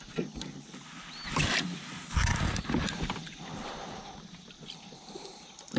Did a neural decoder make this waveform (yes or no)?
no